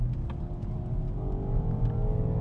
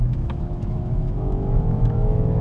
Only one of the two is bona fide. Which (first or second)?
first